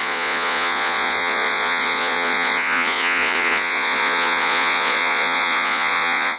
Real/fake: fake